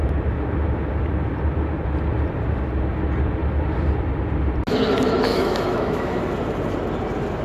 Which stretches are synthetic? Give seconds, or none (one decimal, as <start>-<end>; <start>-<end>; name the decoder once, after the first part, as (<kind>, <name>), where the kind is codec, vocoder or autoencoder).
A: 5.3-6.2 (autoencoder, DAC-VAE)